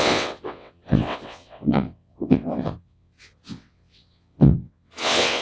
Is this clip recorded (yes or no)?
no